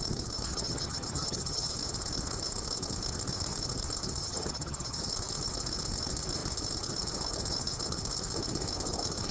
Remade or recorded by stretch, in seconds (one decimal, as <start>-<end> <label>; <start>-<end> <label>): 0.0-0.5 recorded; 0.5-1.7 remade; 1.7-4.2 recorded; 4.2-5.0 remade; 5.0-9.3 recorded